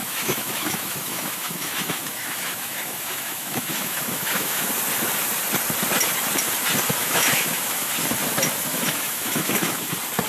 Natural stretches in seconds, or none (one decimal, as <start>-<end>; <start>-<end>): 4.7-7.0; 7.9-8.7; 9.9-10.3